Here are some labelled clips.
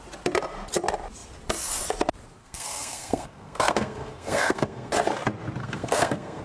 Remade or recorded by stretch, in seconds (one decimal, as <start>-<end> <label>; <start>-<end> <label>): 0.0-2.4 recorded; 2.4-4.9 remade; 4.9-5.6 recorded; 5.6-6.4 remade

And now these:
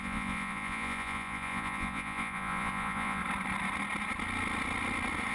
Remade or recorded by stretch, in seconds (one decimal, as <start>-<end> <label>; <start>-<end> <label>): 0.0-3.2 remade; 3.2-5.3 recorded

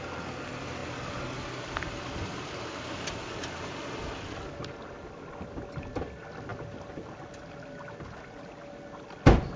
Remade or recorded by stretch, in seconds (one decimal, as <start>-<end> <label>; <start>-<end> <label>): 0.0-9.6 recorded

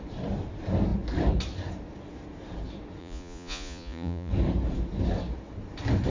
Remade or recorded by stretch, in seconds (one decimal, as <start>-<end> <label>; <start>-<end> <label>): 0.0-3.0 recorded; 3.0-4.3 remade; 4.3-6.1 recorded

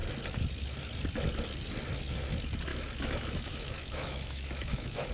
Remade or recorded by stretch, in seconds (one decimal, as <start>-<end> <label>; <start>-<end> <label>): 0.0-2.7 recorded; 2.7-5.1 remade

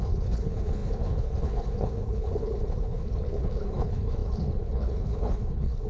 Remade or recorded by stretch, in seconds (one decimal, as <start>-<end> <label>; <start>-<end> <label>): 0.0-5.9 remade

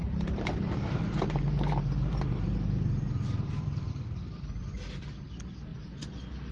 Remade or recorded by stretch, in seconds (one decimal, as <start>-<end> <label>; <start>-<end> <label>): 0.0-3.9 remade; 3.9-6.5 recorded